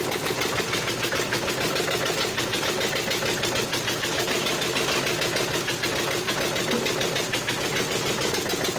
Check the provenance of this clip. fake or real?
real